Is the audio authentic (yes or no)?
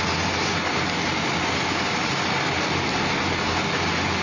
yes